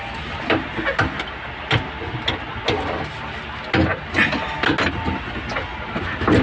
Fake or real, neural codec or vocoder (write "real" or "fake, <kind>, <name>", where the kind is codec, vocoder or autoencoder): real